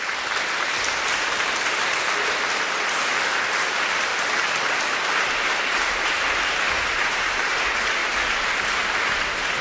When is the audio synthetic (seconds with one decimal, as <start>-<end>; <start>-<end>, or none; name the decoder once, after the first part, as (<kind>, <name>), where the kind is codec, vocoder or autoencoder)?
4.1-7.6 (vocoder, BigVGAN v2)